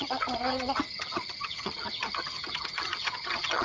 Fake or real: fake